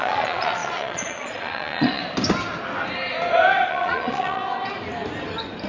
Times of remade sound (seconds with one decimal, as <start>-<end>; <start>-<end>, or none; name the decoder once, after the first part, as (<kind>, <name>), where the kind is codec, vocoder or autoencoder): 0.0-2.0 (vocoder, Vocos); 3.7-4.4

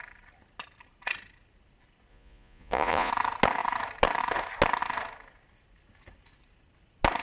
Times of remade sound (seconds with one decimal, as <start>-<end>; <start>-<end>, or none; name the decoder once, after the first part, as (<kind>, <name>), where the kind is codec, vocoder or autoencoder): 2.1-3.1 (vocoder, Vocos)